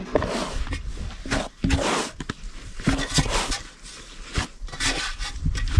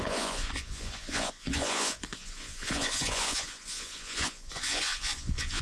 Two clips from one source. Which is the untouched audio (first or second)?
first